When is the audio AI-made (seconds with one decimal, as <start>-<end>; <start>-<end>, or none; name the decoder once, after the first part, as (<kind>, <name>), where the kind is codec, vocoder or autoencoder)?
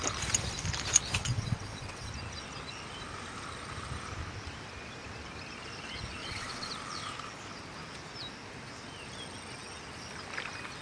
1.2-2.1 (vocoder, WaveNeXt); 6.2-6.7